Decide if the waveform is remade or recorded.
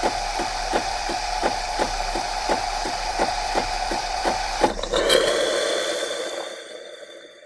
remade